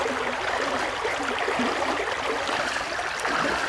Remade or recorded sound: recorded